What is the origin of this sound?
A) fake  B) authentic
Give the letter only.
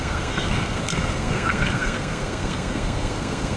A